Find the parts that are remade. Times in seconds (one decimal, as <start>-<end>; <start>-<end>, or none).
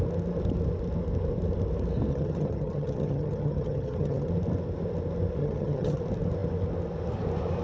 2.1-4.3; 5.4-6.0